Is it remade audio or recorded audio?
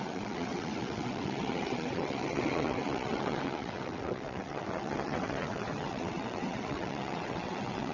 remade